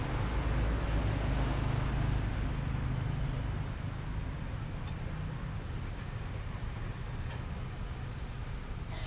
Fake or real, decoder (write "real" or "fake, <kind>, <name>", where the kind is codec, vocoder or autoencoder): real